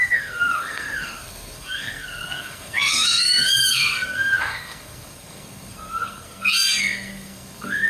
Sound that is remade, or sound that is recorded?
remade